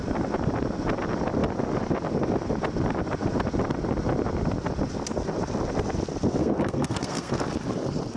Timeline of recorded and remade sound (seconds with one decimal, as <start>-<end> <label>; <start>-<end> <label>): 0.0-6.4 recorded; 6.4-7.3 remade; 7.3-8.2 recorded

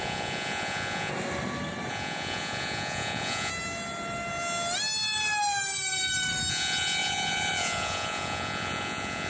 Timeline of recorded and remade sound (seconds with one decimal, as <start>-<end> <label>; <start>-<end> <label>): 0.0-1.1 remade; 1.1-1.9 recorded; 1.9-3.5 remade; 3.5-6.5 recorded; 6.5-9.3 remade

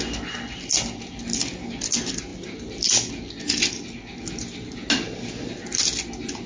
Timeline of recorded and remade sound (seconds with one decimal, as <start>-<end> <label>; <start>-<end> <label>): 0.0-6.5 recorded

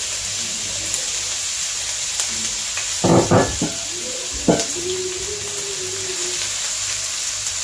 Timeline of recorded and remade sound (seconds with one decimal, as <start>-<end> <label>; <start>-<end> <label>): 0.0-7.6 recorded

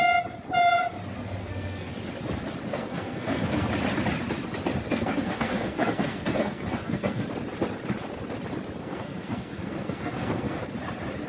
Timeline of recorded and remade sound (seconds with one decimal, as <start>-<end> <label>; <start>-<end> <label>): 0.0-1.4 recorded; 1.4-1.9 remade; 1.9-2.7 recorded; 2.7-3.7 remade; 3.7-4.9 recorded; 4.9-7.2 remade; 7.2-8.8 recorded; 8.8-10.6 remade; 10.6-11.3 recorded